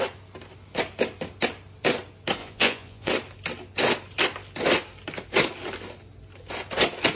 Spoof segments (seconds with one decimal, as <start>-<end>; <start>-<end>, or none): 2.4-3.1